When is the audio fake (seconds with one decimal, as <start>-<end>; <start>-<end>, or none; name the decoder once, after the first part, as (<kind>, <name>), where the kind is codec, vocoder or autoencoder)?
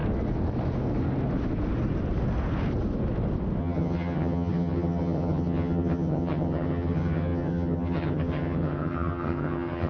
3.6-9.9 (vocoder, HiFi-GAN)